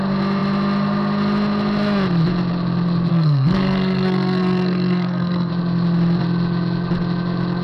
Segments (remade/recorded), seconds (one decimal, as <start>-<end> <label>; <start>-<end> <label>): 0.0-3.1 recorded; 3.1-5.5 remade; 5.5-7.6 recorded